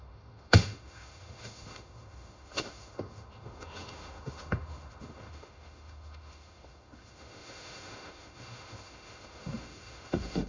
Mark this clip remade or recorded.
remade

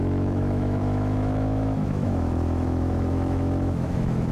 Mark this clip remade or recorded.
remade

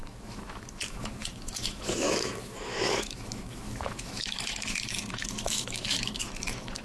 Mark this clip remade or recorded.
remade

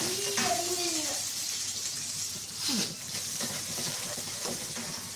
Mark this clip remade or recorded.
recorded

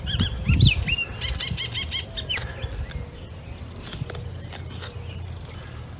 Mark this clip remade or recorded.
recorded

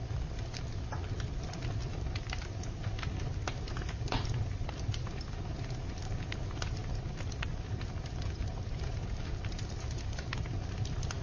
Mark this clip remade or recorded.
recorded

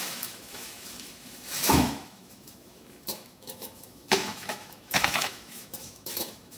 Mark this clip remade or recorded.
remade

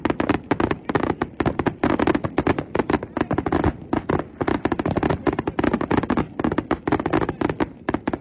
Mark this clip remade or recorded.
recorded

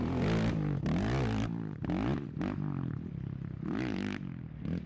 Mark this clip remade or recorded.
recorded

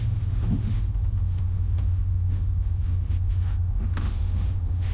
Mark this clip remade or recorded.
remade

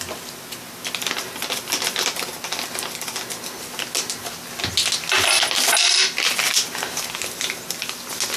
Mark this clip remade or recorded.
recorded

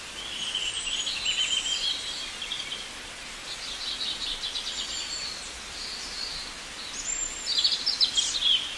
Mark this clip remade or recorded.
recorded